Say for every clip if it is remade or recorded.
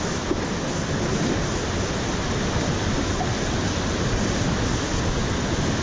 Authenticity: recorded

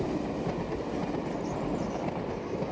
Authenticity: recorded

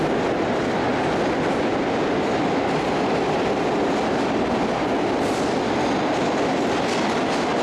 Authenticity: recorded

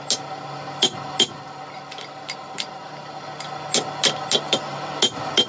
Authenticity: recorded